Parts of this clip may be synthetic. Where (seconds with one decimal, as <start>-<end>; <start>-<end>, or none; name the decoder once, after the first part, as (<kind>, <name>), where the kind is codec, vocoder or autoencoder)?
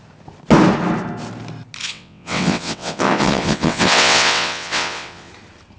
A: 1.8-5.3 (vocoder, WaveNeXt)